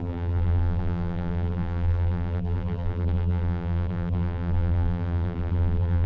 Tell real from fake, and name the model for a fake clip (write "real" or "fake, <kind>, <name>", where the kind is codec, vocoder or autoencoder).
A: fake, vocoder, BigVGAN v2